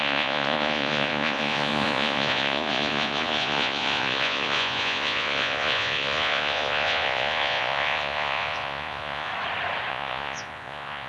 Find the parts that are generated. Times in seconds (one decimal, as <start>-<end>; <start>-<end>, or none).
0.0-9.3; 9.9-11.1